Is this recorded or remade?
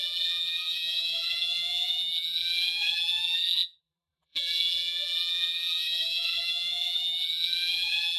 remade